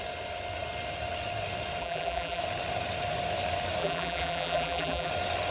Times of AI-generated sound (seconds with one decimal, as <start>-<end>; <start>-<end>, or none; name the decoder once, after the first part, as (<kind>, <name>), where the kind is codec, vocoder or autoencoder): 1.8-2.4 (vocoder, BigVGAN v2); 3.8-5.1